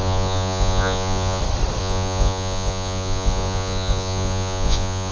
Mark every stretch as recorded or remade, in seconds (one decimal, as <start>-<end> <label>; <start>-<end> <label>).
0.0-1.4 remade; 1.4-1.8 recorded; 1.8-5.1 remade